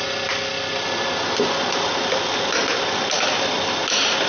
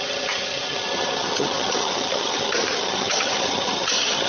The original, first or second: first